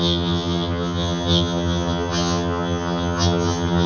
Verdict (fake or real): fake